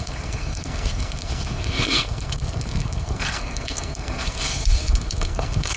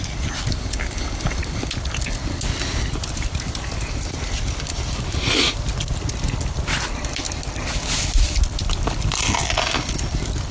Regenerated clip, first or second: first